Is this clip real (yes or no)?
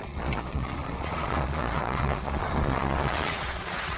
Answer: no